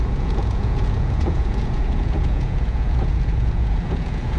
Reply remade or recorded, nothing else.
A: remade